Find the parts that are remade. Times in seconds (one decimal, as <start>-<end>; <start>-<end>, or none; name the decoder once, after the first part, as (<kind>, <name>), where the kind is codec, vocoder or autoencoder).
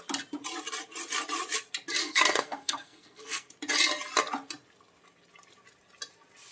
2.0-3.5 (codec, SNAC)